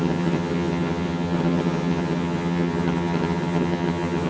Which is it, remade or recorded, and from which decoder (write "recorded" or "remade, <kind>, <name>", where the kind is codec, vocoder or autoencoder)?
remade, vocoder, HiFi-GAN